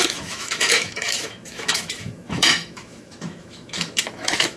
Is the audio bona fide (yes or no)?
no